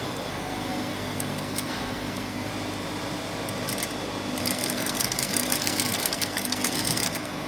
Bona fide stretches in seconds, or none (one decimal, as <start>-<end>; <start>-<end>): 2.5-4.4